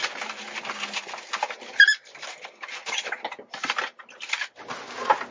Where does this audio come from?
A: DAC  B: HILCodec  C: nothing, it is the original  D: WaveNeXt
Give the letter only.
C